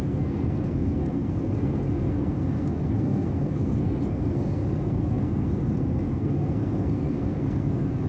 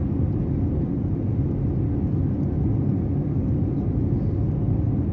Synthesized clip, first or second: first